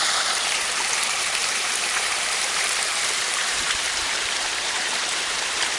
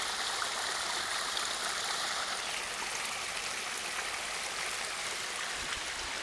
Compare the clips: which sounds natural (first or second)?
second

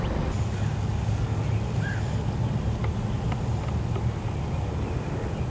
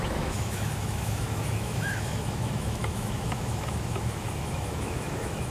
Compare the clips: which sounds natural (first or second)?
first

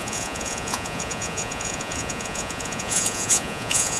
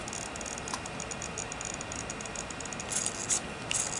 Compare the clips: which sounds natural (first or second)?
second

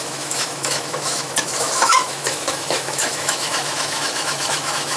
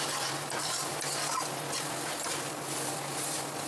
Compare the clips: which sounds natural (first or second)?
second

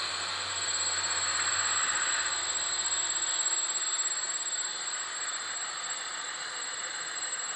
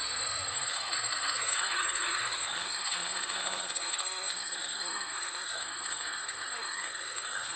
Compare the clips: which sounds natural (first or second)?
first